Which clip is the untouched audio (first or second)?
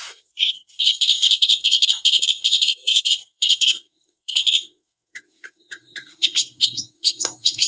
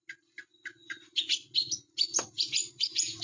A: second